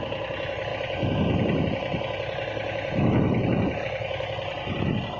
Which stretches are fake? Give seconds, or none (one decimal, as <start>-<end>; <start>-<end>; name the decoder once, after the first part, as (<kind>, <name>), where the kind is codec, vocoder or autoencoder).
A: none